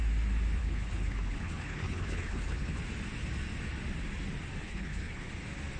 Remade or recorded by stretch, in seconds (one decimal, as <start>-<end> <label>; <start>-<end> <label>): 0.0-0.6 recorded; 0.6-2.8 remade; 2.8-4.6 recorded; 4.6-5.3 remade; 5.3-5.8 recorded